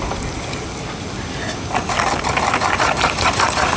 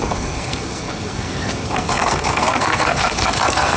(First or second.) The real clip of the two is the first